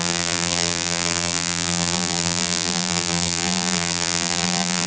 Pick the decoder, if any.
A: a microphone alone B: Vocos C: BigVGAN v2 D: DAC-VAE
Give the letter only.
C